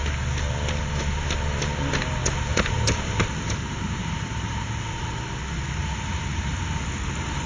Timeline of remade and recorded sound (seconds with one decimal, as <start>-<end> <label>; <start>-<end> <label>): 0.0-2.2 recorded; 2.2-3.2 remade; 3.2-4.0 recorded; 4.0-5.1 remade; 5.1-7.5 recorded